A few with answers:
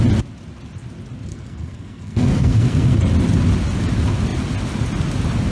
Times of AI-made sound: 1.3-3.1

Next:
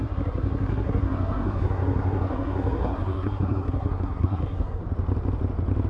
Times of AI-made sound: 0.0-4.8

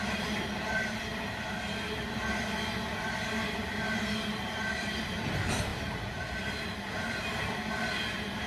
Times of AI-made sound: 0.0-1.1; 4.7-8.5